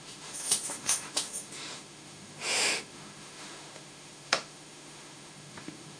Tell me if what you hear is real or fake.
fake